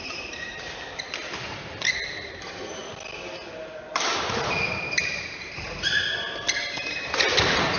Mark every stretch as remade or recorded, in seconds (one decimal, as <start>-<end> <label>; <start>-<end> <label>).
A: 0.0-0.5 remade; 0.5-1.9 recorded; 1.9-2.8 remade; 2.8-4.5 recorded; 4.5-7.8 remade